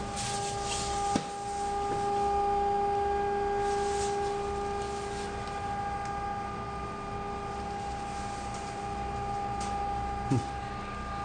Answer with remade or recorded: recorded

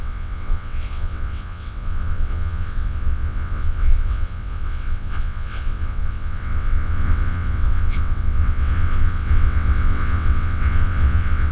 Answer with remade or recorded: remade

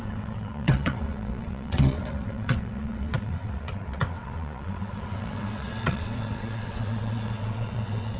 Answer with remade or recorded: remade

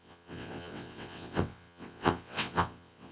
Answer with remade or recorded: remade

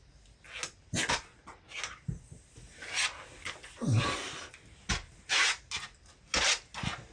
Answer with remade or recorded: recorded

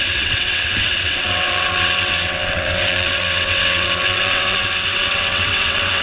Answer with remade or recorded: remade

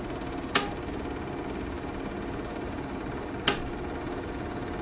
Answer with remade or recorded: recorded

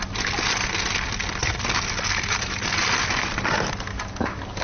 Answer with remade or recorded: recorded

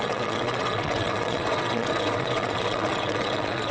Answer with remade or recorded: remade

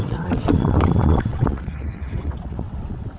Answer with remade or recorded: remade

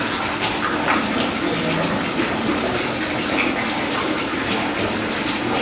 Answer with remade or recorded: recorded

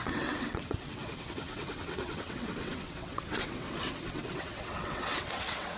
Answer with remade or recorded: remade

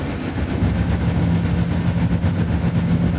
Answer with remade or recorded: recorded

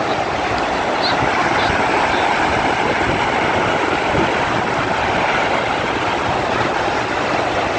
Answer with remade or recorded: recorded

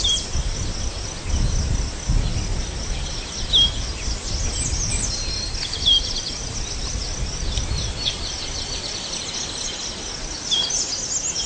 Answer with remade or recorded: recorded